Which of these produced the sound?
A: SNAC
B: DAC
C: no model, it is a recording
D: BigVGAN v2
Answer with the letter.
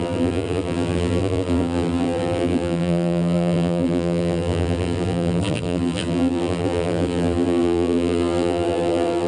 D